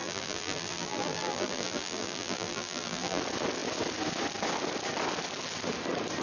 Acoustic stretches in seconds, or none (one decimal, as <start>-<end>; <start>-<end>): 3.2-6.2